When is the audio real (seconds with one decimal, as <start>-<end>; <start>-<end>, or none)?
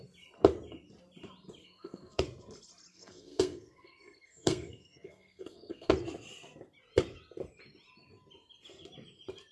0.0-1.6; 2.2-2.9; 5.9-9.5